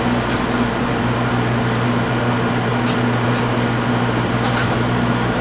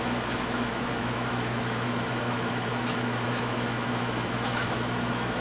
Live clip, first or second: first